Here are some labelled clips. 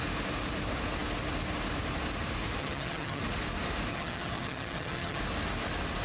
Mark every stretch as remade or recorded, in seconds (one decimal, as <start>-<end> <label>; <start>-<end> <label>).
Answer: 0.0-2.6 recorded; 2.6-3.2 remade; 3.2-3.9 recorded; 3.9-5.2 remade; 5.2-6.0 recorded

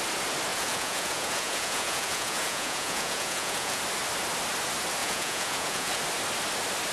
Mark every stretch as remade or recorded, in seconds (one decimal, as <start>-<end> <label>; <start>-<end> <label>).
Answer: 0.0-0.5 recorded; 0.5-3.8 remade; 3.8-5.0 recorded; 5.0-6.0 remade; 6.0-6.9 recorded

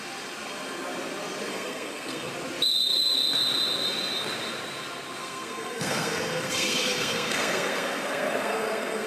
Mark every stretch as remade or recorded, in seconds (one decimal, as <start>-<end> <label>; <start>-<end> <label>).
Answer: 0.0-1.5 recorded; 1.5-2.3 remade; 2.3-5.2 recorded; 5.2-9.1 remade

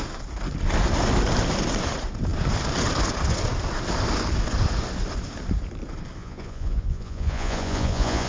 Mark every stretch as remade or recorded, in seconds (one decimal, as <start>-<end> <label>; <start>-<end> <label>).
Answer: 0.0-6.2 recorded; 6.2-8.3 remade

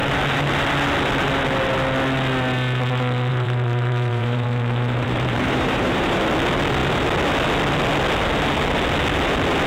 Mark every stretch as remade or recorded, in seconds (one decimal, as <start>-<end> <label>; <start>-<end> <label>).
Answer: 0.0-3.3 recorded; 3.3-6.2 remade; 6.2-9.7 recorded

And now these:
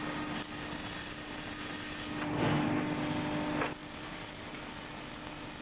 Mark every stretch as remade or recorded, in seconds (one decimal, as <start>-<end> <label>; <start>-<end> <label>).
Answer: 0.0-3.8 recorded; 3.8-4.3 remade; 4.3-5.6 recorded

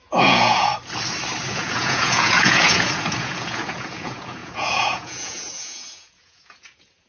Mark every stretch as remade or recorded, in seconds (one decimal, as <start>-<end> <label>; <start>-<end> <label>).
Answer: 0.0-0.7 remade; 0.7-1.5 recorded; 1.5-7.1 remade